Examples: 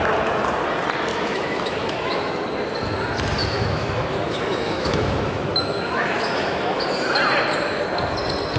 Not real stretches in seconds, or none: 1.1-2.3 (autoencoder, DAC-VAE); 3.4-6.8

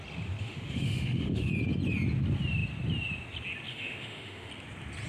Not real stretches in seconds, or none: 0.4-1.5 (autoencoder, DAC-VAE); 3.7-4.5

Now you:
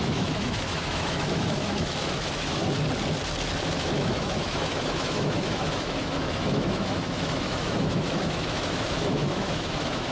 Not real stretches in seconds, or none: 0.0-2.6 (autoencoder, DAC-VAE); 3.6-10.1